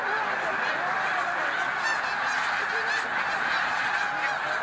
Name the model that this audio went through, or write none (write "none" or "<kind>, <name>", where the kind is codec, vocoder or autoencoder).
none